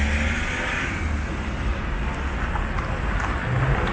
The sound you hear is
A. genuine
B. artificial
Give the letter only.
A